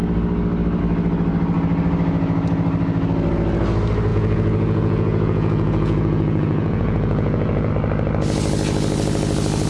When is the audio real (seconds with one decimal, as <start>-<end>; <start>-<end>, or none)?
0.0-4.1; 7.7-9.7